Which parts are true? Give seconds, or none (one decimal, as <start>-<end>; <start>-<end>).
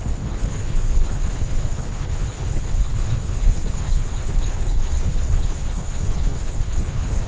none